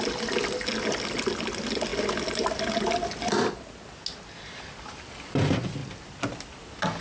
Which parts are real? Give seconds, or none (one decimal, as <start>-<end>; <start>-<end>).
0.0-7.0